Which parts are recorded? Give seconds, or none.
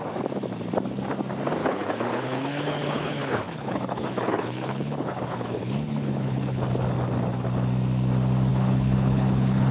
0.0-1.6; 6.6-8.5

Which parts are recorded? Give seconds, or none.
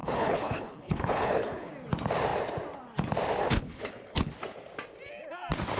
1.7-3.4; 4.3-5.8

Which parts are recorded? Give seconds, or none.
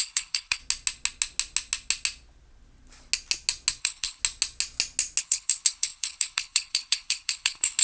0.6-3.8; 4.2-5.2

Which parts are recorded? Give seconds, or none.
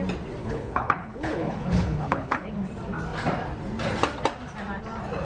0.0-0.4; 2.5-5.2